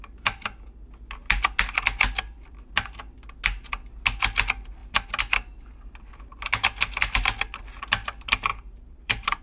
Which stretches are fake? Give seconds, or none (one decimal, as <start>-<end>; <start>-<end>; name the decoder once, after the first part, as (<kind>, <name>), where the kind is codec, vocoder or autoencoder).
8.5-9.4 (vocoder, BigVGAN v2)